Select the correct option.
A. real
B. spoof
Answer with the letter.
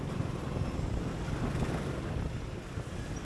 A